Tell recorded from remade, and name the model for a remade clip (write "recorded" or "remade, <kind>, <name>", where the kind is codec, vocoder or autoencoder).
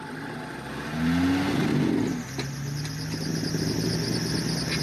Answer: recorded